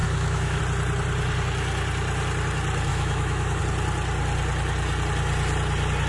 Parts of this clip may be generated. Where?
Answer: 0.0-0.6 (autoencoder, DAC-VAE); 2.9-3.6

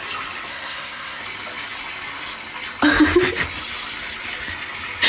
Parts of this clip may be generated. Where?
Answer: 0.5-1.2 (codec, SNAC)

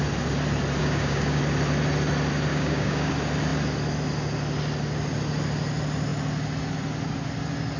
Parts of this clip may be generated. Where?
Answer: 0.8-1.4 (codec, DAC); 2.5-3.1

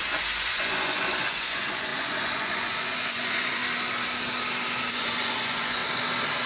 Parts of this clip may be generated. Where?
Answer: 0.0-3.6 (vocoder, Vocos); 4.9-5.8

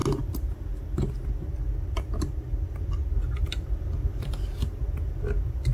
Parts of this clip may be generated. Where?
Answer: none

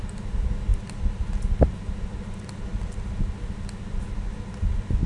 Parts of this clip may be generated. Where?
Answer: none

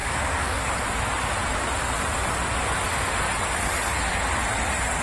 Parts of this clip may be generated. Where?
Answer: 0.0-0.7 (codec, DAC)